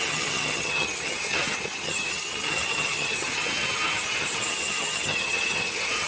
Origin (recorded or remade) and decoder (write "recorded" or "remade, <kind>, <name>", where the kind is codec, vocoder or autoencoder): remade, vocoder, HiFi-GAN